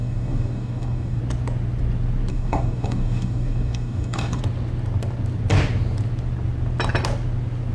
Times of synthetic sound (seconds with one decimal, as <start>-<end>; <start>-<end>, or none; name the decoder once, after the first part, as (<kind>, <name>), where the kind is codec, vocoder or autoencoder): 0.0-1.2 (codec, DAC); 2.3-4.4